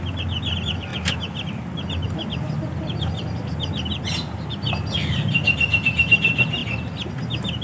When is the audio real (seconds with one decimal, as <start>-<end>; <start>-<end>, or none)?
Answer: 0.9-1.6; 6.6-7.1